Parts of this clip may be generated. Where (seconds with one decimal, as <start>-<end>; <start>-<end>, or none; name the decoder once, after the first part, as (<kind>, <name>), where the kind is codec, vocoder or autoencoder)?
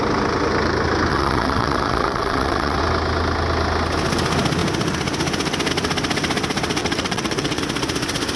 1.1-2.8 (vocoder, WaveNeXt); 6.8-7.6